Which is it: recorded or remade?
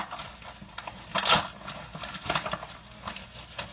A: recorded